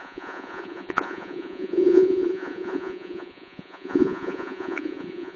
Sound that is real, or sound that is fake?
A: fake